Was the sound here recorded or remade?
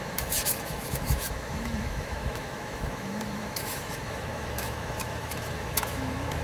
remade